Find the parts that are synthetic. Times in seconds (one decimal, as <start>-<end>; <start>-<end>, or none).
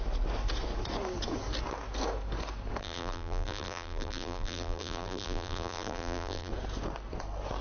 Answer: 2.8-6.5